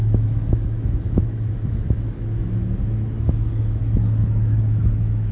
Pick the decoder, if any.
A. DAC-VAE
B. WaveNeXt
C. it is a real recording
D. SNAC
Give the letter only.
A